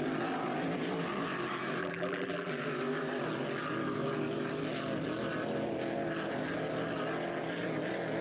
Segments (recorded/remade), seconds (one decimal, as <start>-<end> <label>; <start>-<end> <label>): 0.0-1.8 recorded; 1.8-2.5 remade; 2.5-8.2 recorded